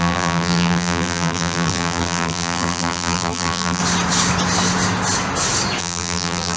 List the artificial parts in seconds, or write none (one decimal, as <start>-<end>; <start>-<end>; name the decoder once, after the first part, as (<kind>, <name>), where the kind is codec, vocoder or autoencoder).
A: 0.0-3.8 (vocoder, BigVGAN v2); 5.8-6.6